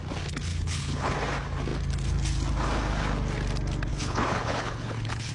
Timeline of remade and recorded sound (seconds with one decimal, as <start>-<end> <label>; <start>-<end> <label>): 0.0-0.5 recorded; 0.5-1.1 remade; 1.1-3.9 recorded; 3.9-5.3 remade